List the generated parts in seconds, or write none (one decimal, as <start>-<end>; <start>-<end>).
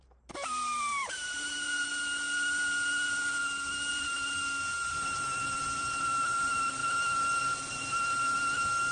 0.0-1.9; 3.9-6.8; 7.4-8.9